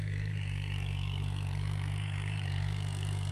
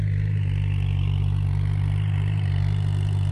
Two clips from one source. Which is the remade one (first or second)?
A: first